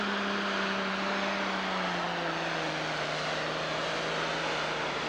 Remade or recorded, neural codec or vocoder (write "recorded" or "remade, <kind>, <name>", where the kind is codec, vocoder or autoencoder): recorded